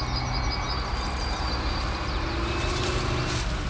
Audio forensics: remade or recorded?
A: recorded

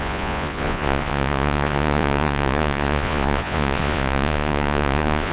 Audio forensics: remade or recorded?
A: remade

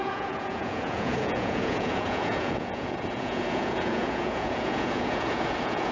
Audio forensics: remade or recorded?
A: remade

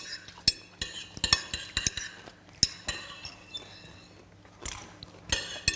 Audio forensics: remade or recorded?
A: recorded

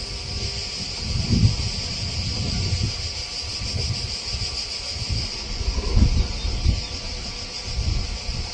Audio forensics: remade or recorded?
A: recorded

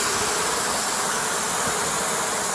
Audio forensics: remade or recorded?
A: recorded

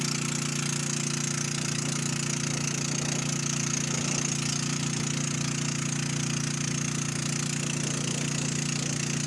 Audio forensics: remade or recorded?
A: recorded